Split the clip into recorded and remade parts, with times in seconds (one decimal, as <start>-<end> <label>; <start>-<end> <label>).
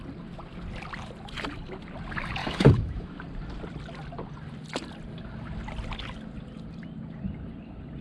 0.0-2.4 recorded; 2.4-3.1 remade; 3.1-8.0 recorded